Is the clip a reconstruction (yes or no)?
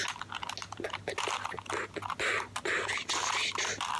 no